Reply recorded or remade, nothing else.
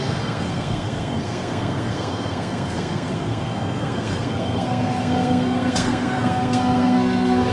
remade